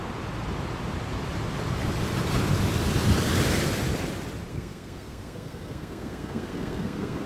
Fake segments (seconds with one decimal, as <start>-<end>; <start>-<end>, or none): 4.5-7.3